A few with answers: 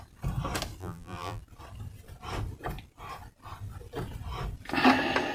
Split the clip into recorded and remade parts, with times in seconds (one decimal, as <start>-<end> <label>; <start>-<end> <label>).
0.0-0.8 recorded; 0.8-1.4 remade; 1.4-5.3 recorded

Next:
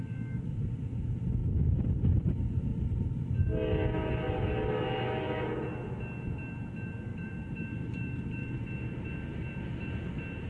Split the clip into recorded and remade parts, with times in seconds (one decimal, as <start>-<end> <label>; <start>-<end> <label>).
0.0-1.4 recorded; 1.4-2.3 remade; 2.3-2.7 recorded; 2.7-3.3 remade; 3.3-7.1 recorded; 7.1-8.6 remade; 8.6-10.5 recorded

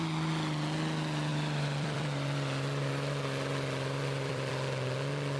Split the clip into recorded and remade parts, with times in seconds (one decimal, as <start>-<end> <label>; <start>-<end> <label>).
0.0-1.3 recorded; 1.3-4.5 remade; 4.5-5.4 recorded

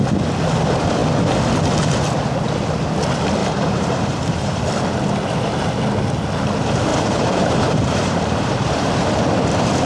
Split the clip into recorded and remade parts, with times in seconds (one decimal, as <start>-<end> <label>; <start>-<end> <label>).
0.0-3.4 recorded; 3.4-4.7 remade; 4.7-6.9 recorded; 6.9-9.2 remade; 9.2-9.8 recorded